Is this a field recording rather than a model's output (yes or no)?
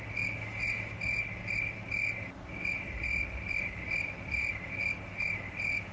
yes